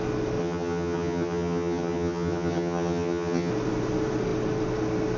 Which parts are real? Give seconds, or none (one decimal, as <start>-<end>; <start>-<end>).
0.0-0.4; 3.5-5.2